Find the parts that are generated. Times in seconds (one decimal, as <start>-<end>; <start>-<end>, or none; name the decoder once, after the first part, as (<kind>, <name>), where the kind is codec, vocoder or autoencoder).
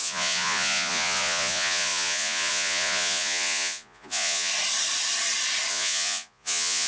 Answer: 0.0-4.5 (vocoder, Vocos); 5.7-6.9